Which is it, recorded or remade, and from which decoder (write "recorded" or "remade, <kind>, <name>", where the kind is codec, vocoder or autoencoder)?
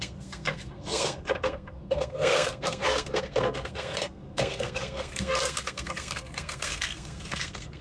remade, codec, SNAC